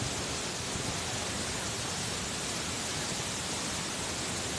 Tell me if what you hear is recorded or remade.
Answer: recorded